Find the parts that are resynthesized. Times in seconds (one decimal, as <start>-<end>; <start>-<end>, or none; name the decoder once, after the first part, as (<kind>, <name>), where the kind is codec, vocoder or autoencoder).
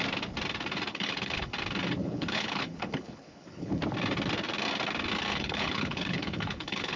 0.9-1.5 (codec, HILCodec); 2.0-3.8; 5.3-7.0